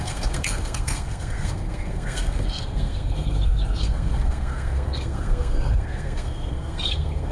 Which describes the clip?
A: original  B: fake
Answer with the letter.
B